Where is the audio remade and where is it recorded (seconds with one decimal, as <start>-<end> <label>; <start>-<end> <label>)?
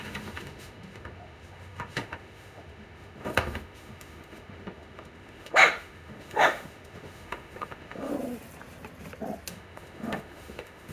0.0-8.1 remade; 8.1-9.5 recorded; 9.5-10.9 remade